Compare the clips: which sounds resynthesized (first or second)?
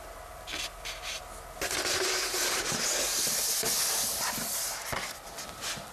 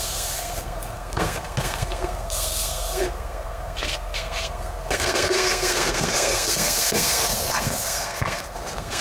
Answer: second